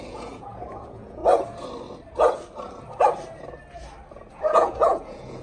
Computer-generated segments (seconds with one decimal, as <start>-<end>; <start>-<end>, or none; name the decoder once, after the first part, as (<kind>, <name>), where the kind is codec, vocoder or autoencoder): 0.0-1.2 (vocoder, Vocos); 4.4-5.4